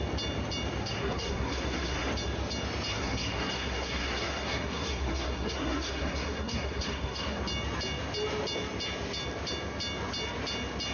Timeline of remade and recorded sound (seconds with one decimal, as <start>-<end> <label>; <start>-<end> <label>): 0.0-0.8 recorded; 0.8-2.1 remade; 2.1-2.9 recorded; 2.9-7.4 remade; 7.4-10.9 recorded